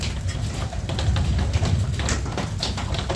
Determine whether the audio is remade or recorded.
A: recorded